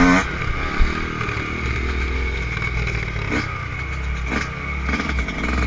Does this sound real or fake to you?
real